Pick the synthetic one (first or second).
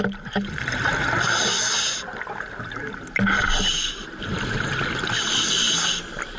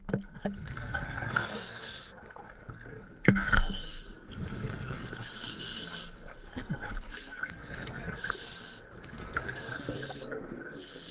second